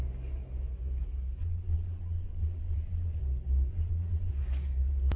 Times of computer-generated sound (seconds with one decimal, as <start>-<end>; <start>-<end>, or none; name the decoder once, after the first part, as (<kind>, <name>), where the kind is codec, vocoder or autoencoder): 1.4-3.2 (vocoder, Vocos); 3.7-4.3